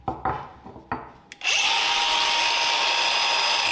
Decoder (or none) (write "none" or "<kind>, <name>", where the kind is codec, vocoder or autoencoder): none